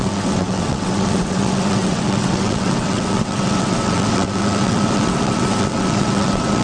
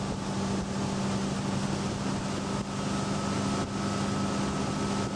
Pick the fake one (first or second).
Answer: first